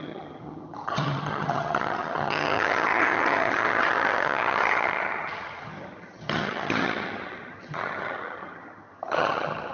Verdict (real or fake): fake